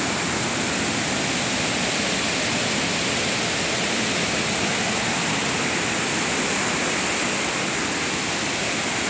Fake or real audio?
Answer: real